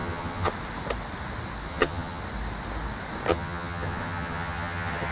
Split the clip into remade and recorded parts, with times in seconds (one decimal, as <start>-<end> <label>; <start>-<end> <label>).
0.0-0.5 remade; 0.5-1.7 recorded; 1.7-2.2 remade; 2.2-3.3 recorded; 3.3-5.1 remade